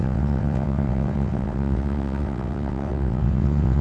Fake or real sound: fake